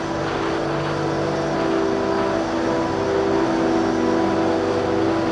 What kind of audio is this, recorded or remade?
recorded